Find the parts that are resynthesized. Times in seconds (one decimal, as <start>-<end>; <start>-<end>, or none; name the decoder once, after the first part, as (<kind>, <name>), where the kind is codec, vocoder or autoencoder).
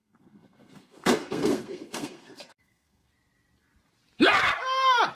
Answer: 0.0-3.1 (codec, SNAC)